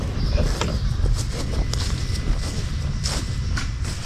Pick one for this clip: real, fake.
real